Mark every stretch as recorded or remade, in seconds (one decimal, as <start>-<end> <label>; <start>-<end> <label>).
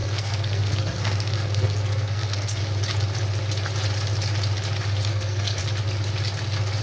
0.0-2.6 remade; 2.6-5.1 recorded; 5.1-5.6 remade; 5.6-6.8 recorded